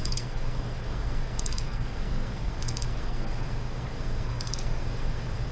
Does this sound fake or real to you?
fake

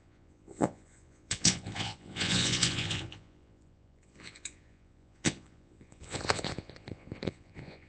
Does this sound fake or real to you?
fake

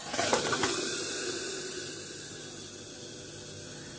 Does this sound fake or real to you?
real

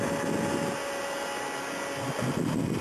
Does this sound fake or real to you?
real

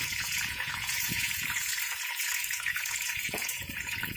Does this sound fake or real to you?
fake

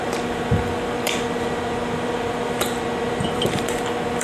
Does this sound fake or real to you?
fake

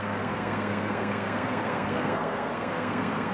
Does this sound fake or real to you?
fake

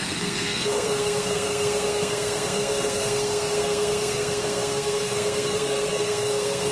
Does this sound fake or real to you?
fake